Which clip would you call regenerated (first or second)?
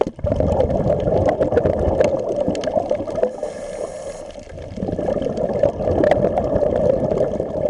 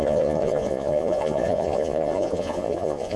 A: second